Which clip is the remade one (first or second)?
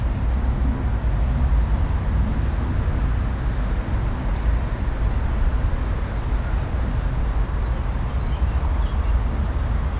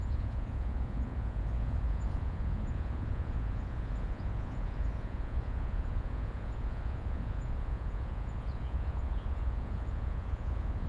second